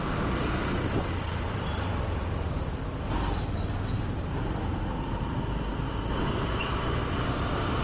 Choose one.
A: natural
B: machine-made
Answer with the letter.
A